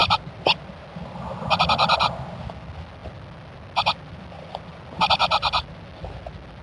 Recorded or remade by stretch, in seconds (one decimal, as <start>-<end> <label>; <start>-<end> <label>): 0.0-1.4 remade; 1.4-6.6 recorded